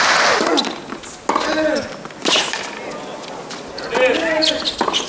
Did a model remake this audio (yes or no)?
no